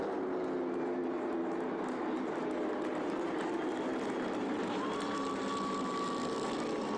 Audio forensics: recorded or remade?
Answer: recorded